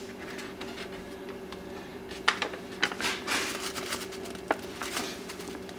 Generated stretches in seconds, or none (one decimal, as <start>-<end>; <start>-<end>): none